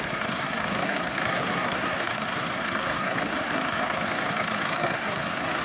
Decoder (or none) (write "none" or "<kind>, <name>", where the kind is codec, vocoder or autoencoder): codec, SNAC